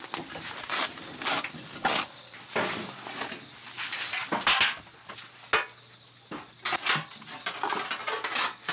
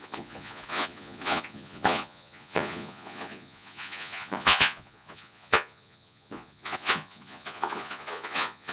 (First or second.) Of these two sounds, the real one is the first